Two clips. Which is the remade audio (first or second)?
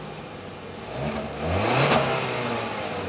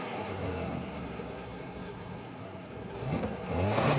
second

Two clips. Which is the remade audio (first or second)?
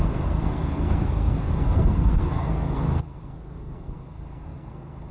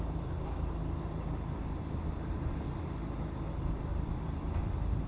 first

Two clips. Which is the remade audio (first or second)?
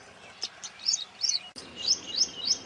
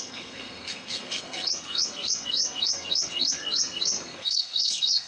second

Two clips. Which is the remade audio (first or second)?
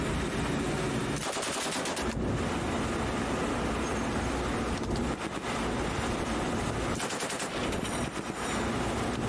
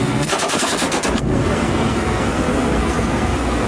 second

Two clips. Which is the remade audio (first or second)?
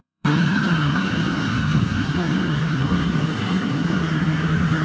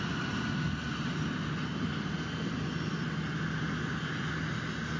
first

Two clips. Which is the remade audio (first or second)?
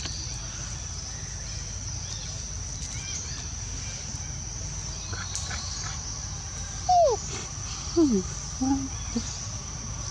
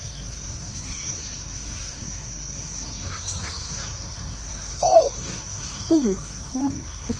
second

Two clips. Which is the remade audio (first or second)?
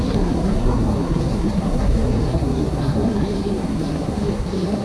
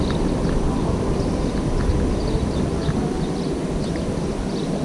first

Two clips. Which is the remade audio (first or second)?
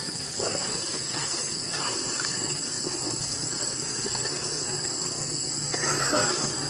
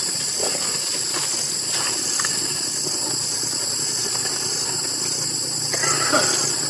first